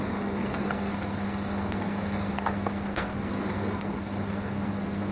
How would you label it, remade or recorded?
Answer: remade